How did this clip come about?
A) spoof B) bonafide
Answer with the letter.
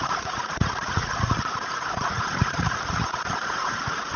A